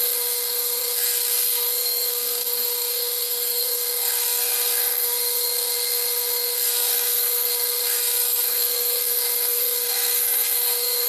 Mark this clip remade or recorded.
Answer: remade